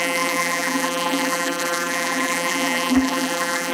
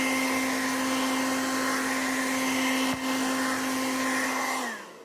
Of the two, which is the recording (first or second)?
second